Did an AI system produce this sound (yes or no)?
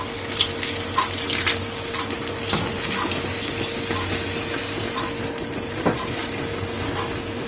no